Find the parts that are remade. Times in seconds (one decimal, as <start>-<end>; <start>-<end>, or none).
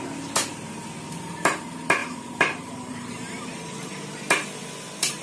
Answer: 2.0-4.0